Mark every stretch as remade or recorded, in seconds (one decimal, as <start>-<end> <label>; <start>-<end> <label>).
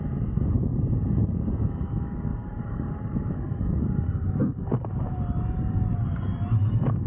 0.0-0.7 recorded; 0.7-1.5 remade; 1.5-2.3 recorded; 2.3-3.2 remade; 3.2-7.1 recorded